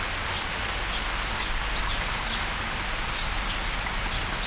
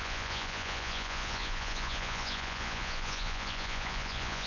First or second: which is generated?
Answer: second